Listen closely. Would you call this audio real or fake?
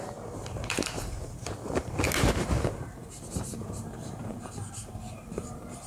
fake